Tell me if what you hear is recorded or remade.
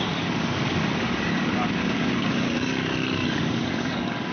remade